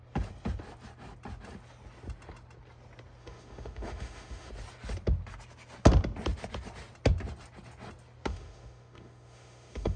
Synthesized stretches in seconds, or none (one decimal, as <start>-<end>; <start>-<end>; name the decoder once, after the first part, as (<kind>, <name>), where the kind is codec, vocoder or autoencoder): 3.2-4.5 (autoencoder, DAC-VAE); 8.3-10.0

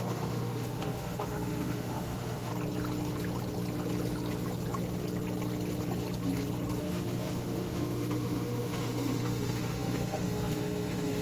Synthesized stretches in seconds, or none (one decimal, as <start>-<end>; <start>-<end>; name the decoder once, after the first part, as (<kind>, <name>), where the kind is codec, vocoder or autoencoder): 0.0-2.5 (autoencoder, DAC-VAE); 6.8-11.2

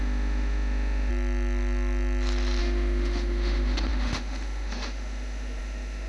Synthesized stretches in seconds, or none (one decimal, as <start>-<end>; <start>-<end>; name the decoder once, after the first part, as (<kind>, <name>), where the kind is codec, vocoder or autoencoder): 0.0-1.1 (autoencoder, DAC-VAE); 2.6-6.1

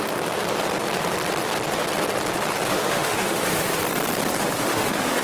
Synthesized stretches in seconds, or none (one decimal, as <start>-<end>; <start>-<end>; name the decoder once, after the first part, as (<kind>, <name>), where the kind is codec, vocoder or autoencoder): 2.7-3.8 (autoencoder, DAC-VAE); 4.4-5.2

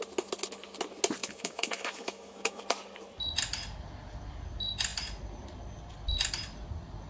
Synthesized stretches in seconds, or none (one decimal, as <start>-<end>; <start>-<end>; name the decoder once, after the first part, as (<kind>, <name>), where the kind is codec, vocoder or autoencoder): 1.2-2.6 (autoencoder, DAC-VAE)

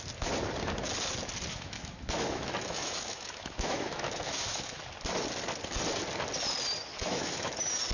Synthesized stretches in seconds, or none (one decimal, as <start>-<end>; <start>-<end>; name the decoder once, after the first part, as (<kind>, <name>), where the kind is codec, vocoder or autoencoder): 1.5-4.8 (autoencoder, DAC-VAE); 6.9-7.5

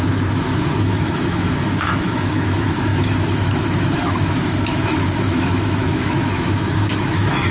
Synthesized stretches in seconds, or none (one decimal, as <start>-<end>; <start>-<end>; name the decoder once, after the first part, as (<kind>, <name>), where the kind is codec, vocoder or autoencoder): 0.0-7.5 (autoencoder, DAC-VAE)